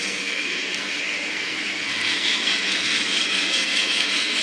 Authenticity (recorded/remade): remade